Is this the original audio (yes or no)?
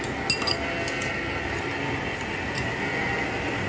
yes